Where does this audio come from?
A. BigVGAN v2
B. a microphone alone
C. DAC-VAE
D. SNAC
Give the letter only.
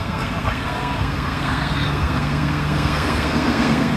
D